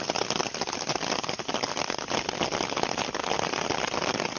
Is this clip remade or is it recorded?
recorded